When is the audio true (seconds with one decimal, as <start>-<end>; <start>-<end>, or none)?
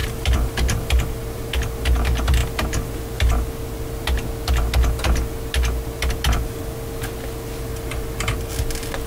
1.5-7.7; 8.4-9.1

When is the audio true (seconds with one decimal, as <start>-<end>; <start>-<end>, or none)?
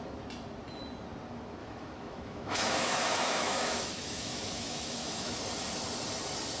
0.0-1.6; 5.4-6.6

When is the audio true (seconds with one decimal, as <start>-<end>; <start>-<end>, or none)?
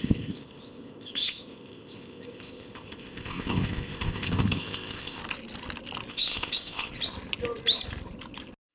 5.2-6.1; 6.9-8.7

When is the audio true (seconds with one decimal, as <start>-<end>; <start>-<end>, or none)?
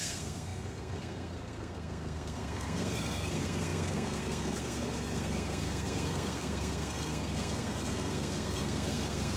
none